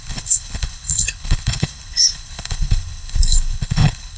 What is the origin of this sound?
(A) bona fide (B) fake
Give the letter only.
B